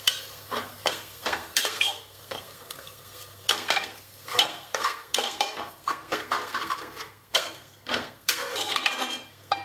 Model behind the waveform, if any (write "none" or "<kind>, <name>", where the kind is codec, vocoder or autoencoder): codec, SNAC